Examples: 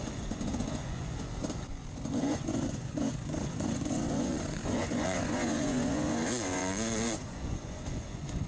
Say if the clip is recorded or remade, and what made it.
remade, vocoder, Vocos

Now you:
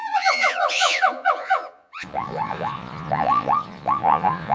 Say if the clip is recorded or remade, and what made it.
remade, vocoder, Vocos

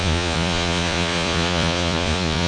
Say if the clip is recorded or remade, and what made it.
remade, vocoder, Vocos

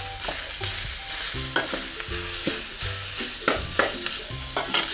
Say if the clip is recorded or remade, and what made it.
recorded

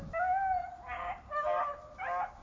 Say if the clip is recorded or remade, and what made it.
recorded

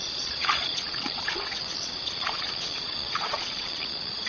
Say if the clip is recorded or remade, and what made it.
remade, vocoder, Vocos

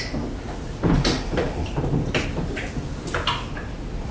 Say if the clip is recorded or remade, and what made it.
recorded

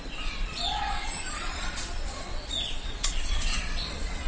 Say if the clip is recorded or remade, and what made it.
remade, vocoder, Vocos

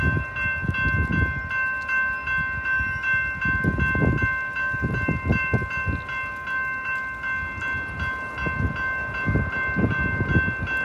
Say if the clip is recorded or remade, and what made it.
recorded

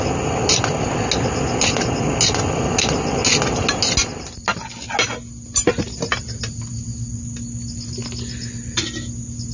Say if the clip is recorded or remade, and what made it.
recorded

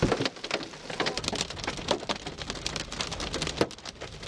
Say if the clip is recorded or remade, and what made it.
recorded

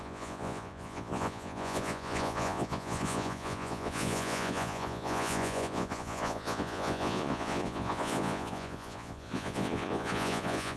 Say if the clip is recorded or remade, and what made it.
remade, vocoder, Vocos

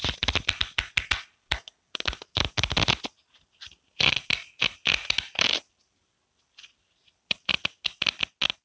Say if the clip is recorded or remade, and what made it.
recorded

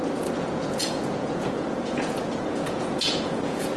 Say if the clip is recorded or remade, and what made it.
remade, vocoder, Vocos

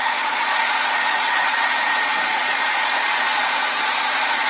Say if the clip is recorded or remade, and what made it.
remade, vocoder, Vocos